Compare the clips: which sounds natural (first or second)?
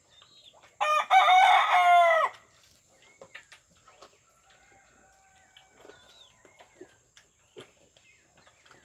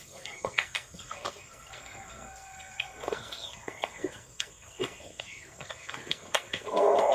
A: first